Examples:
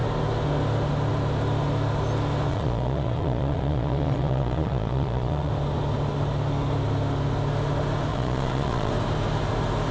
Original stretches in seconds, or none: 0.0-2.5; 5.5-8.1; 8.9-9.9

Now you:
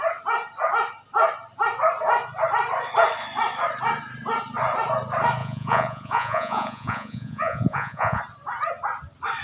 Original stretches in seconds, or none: 0.0-5.4; 8.2-9.4

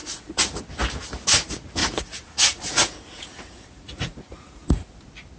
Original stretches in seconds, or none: 0.6-1.8; 5.0-5.4

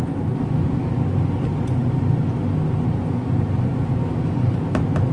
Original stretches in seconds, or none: 0.0-5.1

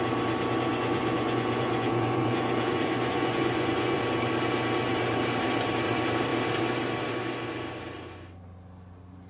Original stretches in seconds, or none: 0.0-0.7; 4.0-9.3

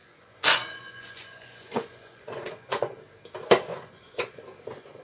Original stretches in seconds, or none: 3.0-3.7; 4.4-5.0

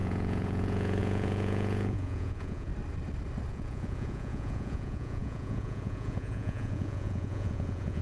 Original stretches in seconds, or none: 2.7-3.5